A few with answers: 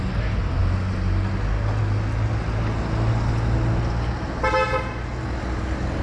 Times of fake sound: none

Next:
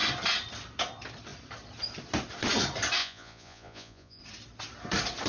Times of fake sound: 3.0-4.2 (vocoder, Vocos)

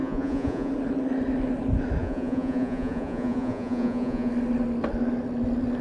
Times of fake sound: 0.0-0.7 (vocoder, Vocos); 2.0-4.3